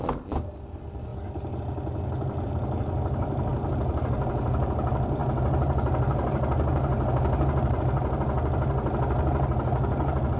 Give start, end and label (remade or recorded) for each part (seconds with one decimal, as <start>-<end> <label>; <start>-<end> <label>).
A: 0.0-10.4 recorded